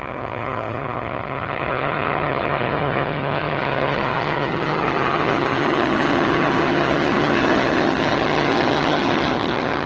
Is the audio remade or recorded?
remade